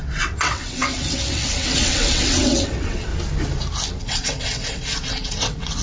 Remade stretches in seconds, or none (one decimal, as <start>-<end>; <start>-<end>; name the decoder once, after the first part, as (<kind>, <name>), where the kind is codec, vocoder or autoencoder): 0.0-3.1 (vocoder, WaveNeXt); 4.0-5.8